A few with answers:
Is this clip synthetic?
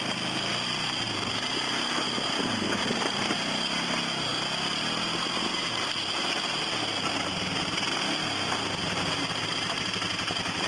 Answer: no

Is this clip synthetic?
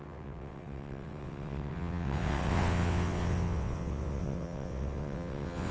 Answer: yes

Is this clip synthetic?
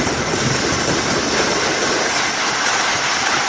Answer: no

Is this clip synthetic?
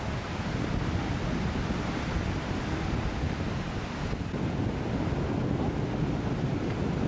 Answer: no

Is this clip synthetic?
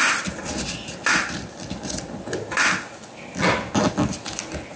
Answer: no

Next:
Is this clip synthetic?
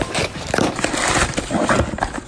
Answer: no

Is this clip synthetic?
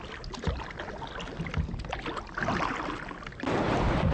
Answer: no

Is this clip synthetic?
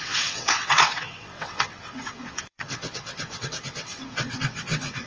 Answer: yes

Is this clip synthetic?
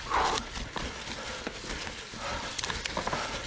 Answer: no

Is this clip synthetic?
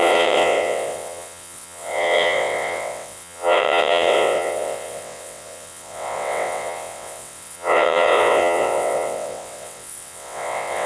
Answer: yes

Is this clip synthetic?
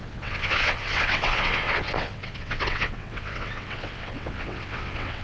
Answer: yes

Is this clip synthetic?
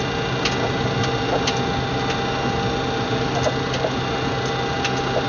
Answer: no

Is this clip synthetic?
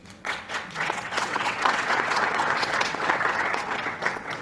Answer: yes